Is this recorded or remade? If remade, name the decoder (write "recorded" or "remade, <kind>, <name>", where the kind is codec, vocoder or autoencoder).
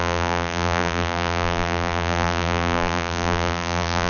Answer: remade, vocoder, BigVGAN v2